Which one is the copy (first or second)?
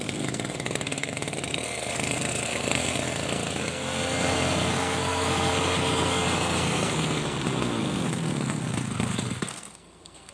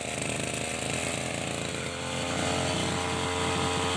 first